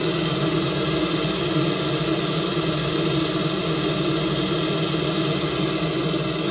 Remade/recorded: recorded